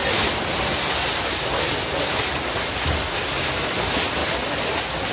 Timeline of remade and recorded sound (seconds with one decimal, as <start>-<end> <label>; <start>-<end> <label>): 0.0-5.1 recorded